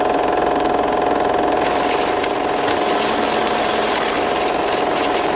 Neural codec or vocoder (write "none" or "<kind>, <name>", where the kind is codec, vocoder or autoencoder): none